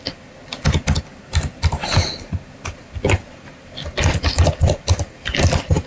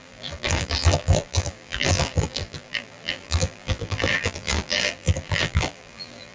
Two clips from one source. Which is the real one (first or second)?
first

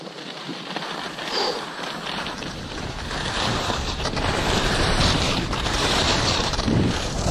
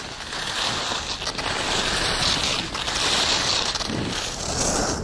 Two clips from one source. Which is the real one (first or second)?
second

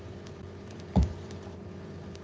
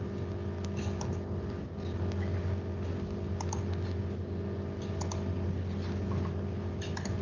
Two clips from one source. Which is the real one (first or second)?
second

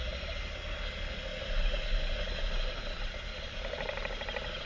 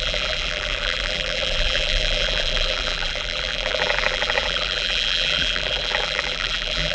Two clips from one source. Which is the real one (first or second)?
first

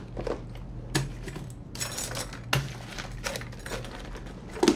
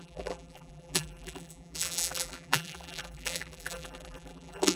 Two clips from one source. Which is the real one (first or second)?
first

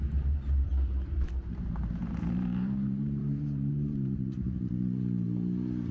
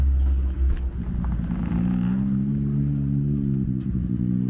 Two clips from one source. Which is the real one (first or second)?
second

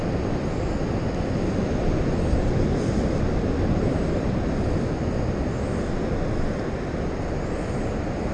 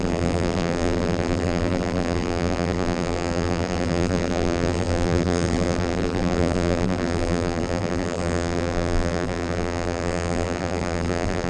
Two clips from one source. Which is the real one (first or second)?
first